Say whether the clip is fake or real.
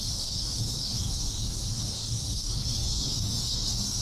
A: fake